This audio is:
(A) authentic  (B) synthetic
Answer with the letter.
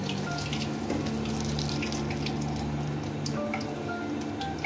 A